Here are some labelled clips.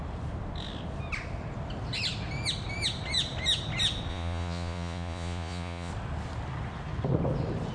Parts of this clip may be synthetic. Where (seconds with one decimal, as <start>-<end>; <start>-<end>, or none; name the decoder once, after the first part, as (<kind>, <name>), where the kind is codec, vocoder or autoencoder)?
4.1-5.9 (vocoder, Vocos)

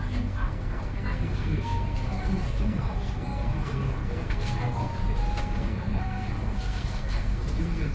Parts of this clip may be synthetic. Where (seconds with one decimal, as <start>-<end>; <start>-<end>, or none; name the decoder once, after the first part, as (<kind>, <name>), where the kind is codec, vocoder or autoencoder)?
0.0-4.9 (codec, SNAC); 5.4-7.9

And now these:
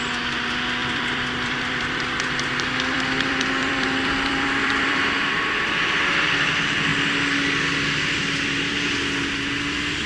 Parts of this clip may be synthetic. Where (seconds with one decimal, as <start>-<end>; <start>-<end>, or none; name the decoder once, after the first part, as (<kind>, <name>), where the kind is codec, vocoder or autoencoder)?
0.8-5.8 (vocoder, BigVGAN v2)

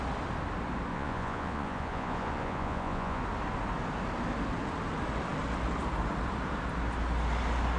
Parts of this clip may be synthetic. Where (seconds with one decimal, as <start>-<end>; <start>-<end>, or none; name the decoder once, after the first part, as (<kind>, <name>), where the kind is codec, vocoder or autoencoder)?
0.9-3.2 (vocoder, Vocos)

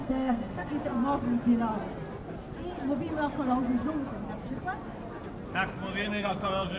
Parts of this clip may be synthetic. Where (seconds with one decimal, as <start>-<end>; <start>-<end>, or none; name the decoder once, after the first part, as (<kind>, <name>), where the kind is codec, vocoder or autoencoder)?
0.0-0.7 (codec, SNAC); 6.0-6.8

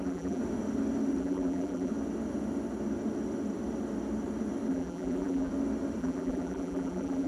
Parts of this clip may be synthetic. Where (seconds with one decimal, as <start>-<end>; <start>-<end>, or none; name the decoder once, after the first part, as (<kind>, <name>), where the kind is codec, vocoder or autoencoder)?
0.0-0.4 (vocoder, BigVGAN v2); 1.2-1.9; 4.7-5.5; 6.0-7.3

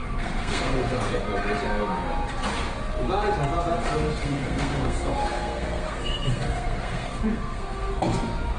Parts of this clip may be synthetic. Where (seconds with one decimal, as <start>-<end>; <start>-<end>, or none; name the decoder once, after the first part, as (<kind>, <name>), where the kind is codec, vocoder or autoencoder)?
0.0-1.2 (codec, SNAC); 4.2-7.9